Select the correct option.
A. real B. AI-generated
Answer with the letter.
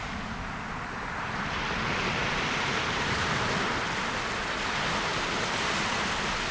A